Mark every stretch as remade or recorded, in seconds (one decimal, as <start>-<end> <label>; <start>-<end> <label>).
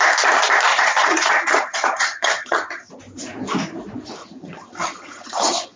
0.0-0.7 recorded; 0.7-2.9 remade; 2.9-4.2 recorded; 4.2-5.8 remade